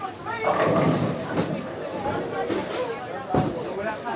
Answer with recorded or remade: remade